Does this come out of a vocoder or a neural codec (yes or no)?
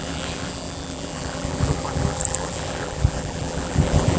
yes